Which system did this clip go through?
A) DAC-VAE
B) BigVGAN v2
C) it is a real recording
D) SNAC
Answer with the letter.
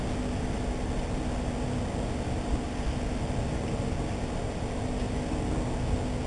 C